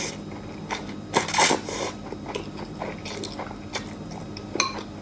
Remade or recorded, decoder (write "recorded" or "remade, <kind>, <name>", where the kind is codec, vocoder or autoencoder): recorded